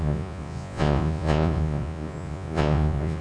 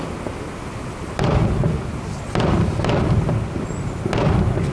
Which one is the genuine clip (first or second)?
second